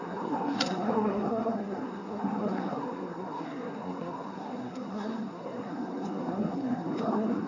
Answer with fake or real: fake